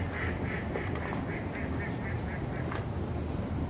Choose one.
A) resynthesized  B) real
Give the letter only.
B